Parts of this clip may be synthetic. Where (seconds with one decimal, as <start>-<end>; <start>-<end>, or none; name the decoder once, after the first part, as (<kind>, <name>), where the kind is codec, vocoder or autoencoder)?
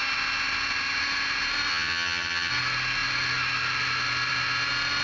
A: 1.7-2.5 (vocoder, HiFi-GAN)